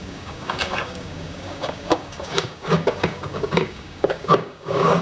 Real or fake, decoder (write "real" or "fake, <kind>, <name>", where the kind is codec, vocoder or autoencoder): fake, codec, DAC